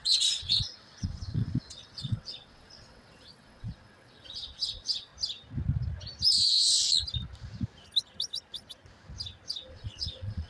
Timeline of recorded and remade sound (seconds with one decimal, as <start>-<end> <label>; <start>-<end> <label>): 0.0-5.1 remade; 5.1-9.7 recorded; 9.7-10.5 remade